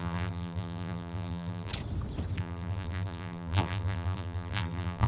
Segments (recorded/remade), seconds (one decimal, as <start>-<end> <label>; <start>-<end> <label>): 0.0-1.7 remade; 1.7-2.4 recorded; 2.4-5.1 remade